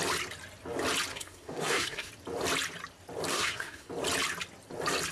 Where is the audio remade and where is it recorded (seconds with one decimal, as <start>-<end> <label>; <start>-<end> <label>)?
0.0-1.1 recorded; 1.1-2.1 remade; 2.1-3.3 recorded; 3.3-3.9 remade; 3.9-5.1 recorded